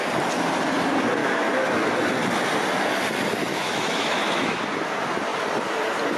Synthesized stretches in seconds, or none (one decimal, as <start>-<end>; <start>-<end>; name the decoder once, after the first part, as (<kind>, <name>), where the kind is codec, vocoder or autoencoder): 1.2-1.8 (autoencoder, DAC-VAE); 3.5-4.6